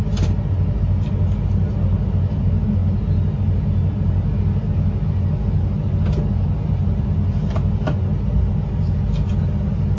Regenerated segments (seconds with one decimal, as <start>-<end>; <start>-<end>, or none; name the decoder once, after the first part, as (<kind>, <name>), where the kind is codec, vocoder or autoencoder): none

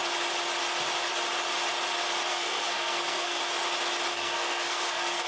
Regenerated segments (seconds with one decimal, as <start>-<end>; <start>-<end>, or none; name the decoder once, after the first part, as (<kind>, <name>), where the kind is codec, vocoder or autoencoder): 2.3-3.4 (codec, SNAC); 4.1-5.3

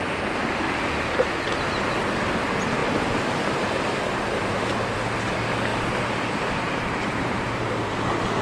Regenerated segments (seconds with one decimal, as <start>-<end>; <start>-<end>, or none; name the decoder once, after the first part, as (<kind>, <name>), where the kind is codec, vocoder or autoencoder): 2.8-4.6 (vocoder, BigVGAN v2); 5.7-8.4